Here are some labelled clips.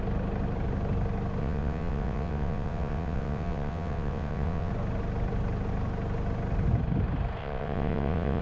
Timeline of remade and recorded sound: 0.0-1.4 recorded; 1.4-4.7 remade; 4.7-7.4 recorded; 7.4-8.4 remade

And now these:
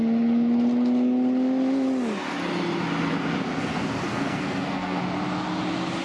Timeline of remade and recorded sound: 0.0-4.1 recorded; 4.1-5.0 remade; 5.0-6.0 recorded

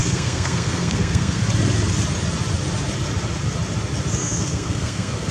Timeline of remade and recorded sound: 0.0-1.4 remade; 1.4-4.2 recorded; 4.2-5.3 remade

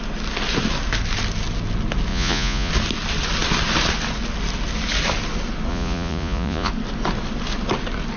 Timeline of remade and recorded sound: 0.0-2.1 recorded; 2.1-2.7 remade; 2.7-5.7 recorded; 5.7-6.7 remade; 6.7-8.2 recorded

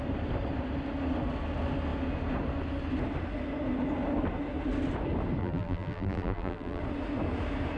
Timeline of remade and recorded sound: 0.0-5.4 recorded; 5.4-6.8 remade; 6.8-7.8 recorded

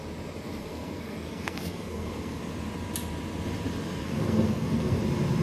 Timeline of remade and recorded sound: 0.0-0.6 recorded; 0.6-2.4 remade; 2.4-4.0 recorded; 4.0-5.0 remade; 5.0-5.4 recorded

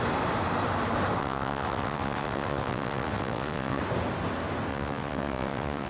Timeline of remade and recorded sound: 0.0-1.2 recorded; 1.2-3.8 remade; 3.8-4.7 recorded; 4.7-5.9 remade

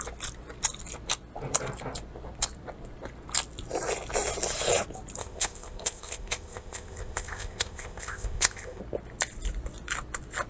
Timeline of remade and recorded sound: 0.0-5.2 recorded; 5.2-8.8 remade; 8.8-10.5 recorded